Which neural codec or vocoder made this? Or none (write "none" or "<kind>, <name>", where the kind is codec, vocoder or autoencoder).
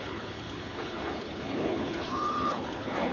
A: codec, HILCodec